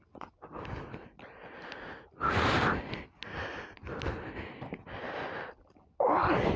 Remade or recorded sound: recorded